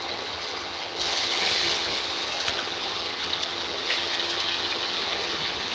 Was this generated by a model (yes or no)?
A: yes